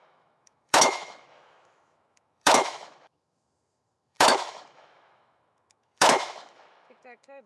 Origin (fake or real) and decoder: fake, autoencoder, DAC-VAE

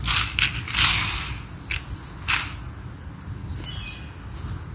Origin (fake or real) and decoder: real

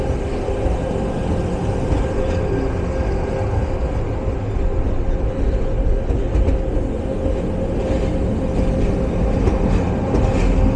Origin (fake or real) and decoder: real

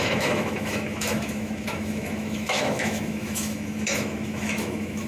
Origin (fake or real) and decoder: fake, autoencoder, DAC-VAE